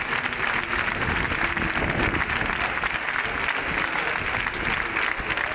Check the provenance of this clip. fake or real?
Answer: real